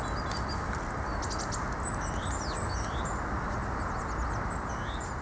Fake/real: real